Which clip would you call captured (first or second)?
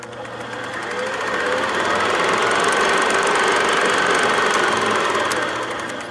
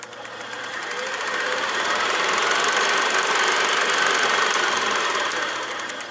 first